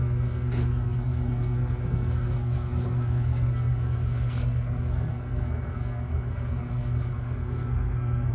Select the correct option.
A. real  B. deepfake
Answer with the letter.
B